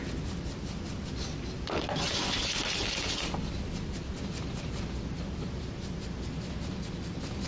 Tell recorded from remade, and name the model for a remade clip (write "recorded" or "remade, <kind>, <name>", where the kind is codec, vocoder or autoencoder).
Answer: recorded